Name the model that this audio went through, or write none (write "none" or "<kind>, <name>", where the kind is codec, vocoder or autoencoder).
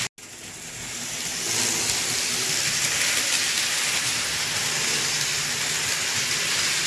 none